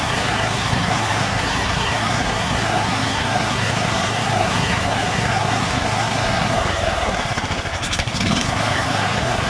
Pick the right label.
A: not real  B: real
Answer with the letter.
A